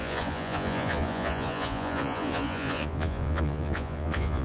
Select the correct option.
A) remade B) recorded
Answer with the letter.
A